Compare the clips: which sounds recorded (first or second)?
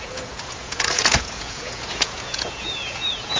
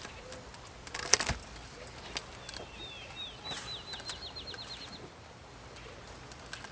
second